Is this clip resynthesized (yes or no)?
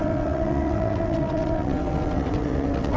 yes